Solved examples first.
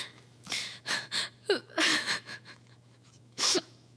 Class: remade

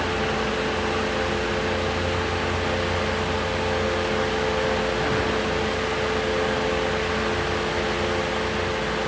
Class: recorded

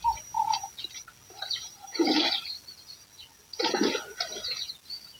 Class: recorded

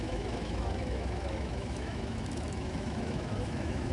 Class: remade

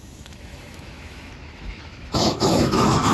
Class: remade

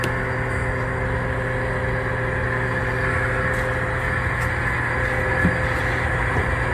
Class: recorded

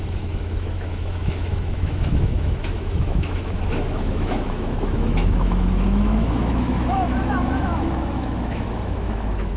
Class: remade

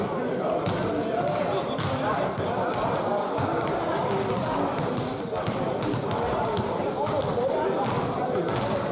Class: recorded